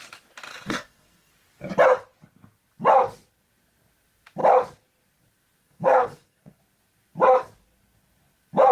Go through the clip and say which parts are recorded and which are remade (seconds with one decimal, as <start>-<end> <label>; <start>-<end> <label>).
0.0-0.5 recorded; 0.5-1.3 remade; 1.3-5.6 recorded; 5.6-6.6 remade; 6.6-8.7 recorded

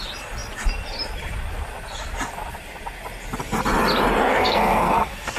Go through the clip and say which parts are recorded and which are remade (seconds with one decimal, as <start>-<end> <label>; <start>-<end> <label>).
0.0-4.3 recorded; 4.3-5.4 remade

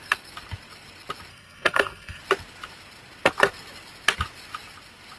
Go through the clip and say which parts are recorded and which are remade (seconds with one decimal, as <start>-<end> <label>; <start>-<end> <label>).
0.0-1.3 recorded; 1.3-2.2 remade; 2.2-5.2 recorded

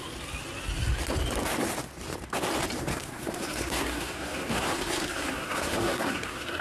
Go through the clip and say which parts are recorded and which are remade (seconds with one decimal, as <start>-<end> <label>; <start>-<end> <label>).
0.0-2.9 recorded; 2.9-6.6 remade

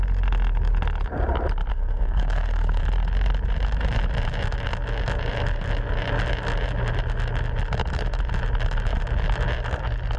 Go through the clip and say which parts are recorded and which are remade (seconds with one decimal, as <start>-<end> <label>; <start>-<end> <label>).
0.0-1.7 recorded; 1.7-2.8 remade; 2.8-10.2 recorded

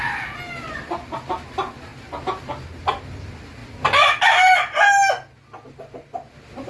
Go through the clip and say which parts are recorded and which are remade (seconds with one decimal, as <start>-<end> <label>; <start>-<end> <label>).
0.0-6.7 recorded